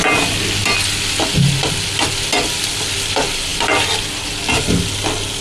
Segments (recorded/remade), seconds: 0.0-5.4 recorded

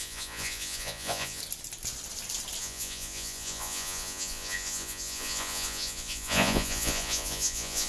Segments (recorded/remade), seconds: 0.0-1.4 remade; 1.4-2.6 recorded; 2.6-7.9 remade

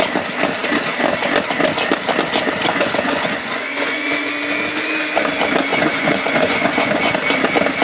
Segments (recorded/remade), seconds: 0.0-2.7 recorded; 2.7-4.3 remade; 4.3-5.7 recorded; 5.7-7.1 remade; 7.1-7.8 recorded

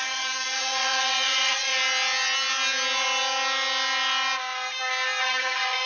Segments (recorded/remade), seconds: 0.0-1.7 remade; 1.7-5.2 recorded; 5.2-5.9 remade

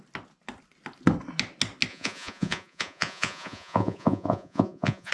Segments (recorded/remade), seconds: 0.0-1.9 recorded; 1.9-5.1 remade

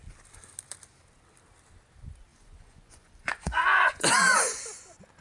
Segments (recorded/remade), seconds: 0.0-2.3 recorded; 2.3-4.6 remade; 4.6-5.2 recorded

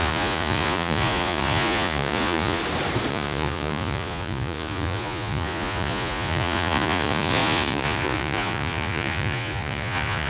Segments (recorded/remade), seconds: 0.0-2.6 remade; 2.6-3.1 recorded; 3.1-10.3 remade

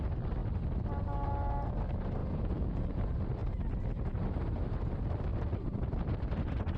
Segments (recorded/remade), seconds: 0.0-2.2 recorded; 2.2-3.0 remade; 3.0-6.8 recorded